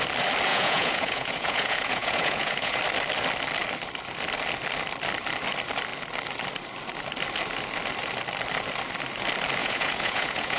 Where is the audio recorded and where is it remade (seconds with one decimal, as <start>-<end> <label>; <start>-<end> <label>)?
0.0-0.5 recorded; 0.5-2.8 remade; 2.8-9.6 recorded; 9.6-10.6 remade